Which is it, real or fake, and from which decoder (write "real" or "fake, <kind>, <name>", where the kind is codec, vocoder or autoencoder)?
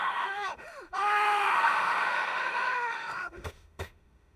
fake, autoencoder, DAC-VAE